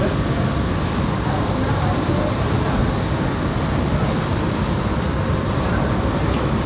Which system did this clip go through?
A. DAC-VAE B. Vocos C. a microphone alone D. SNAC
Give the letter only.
C